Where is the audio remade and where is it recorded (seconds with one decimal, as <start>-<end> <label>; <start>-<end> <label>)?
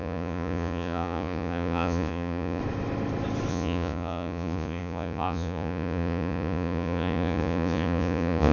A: 0.0-2.6 remade; 2.6-3.5 recorded; 3.5-8.5 remade